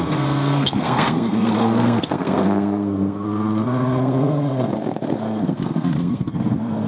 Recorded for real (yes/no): no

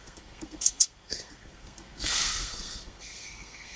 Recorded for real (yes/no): no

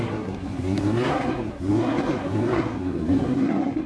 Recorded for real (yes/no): no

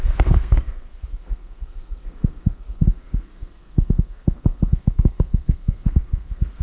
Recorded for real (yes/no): no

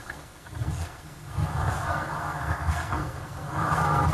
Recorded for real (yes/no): no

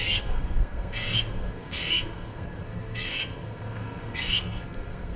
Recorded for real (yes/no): no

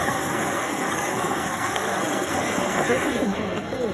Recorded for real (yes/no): no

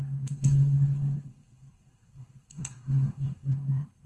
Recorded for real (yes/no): no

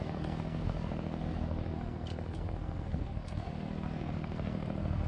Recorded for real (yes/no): no